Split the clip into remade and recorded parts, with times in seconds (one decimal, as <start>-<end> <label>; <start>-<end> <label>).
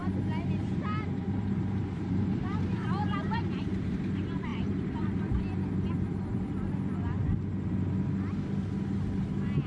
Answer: 0.0-4.0 remade; 4.0-4.5 recorded; 4.5-5.0 remade; 5.0-9.7 recorded